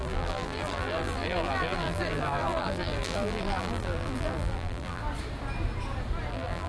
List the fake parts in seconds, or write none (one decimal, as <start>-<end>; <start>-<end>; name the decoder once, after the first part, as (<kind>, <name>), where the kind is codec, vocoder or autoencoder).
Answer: 0.0-5.0 (vocoder, BigVGAN v2); 6.3-6.7